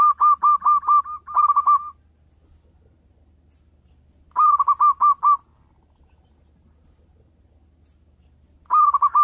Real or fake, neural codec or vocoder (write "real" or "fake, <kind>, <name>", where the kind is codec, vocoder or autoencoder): real